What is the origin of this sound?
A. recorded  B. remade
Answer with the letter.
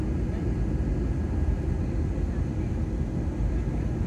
A